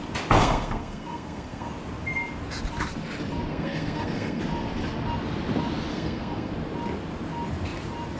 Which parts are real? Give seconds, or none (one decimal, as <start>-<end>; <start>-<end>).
0.0-0.4; 1.7-3.5; 4.4-5.9; 6.5-8.2